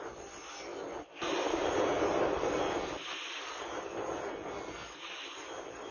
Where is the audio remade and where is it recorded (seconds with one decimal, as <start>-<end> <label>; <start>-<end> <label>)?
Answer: 0.0-0.7 recorded; 0.7-4.2 remade; 4.2-5.9 recorded